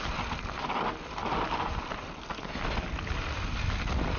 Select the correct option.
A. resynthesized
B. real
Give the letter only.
B